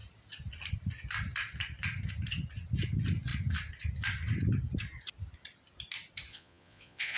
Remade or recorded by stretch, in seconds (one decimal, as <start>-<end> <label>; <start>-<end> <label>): 0.0-6.3 recorded; 6.3-7.2 remade